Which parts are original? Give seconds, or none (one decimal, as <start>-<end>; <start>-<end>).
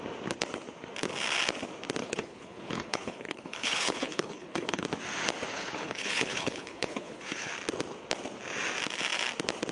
0.0-2.0; 4.8-5.5; 7.5-9.7